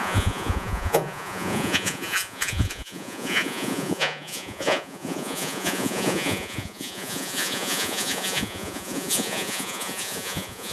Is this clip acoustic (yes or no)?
no